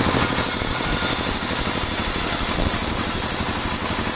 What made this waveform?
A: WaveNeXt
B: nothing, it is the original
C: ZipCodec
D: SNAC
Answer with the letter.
B